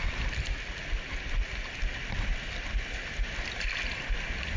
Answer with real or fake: real